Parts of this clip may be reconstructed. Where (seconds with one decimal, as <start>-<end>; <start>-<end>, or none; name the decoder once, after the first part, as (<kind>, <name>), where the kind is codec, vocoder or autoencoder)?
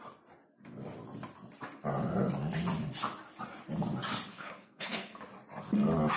4.3-5.2 (codec, SNAC)